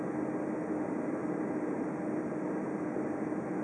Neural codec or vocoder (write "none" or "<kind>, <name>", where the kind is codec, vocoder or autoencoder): none